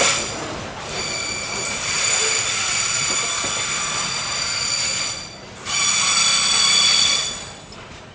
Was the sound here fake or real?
real